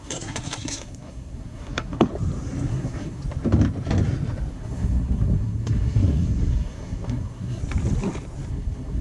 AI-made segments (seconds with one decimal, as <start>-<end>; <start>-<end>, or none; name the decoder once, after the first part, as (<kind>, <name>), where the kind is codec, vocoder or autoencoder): 0.0-2.1 (codec, SNAC); 2.7-3.2; 4.5-7.6; 8.5-9.0